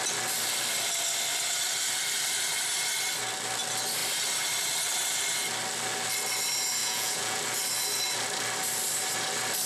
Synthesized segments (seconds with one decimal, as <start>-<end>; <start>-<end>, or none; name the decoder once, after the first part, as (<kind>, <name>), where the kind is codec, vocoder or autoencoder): 6.8-7.4 (vocoder, Vocos)